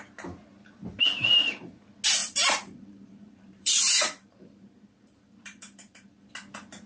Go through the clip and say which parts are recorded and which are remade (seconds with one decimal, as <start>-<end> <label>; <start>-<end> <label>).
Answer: 0.0-2.2 recorded; 2.2-6.3 remade; 6.3-6.9 recorded